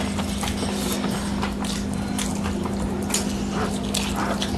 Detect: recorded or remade recorded